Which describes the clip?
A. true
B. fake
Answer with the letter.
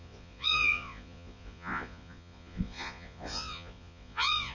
B